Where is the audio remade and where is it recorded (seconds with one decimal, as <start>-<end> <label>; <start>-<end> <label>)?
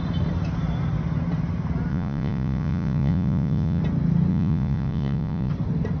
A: 0.0-1.9 recorded; 1.9-3.8 remade; 3.8-4.3 recorded; 4.3-5.5 remade; 5.5-6.0 recorded